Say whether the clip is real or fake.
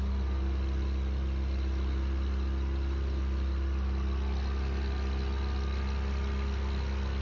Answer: real